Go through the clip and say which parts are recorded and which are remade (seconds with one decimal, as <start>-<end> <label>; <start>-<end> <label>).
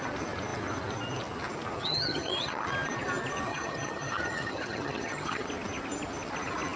0.0-1.8 recorded; 1.8-2.6 remade; 2.6-3.5 recorded; 3.5-5.5 remade; 5.5-6.8 recorded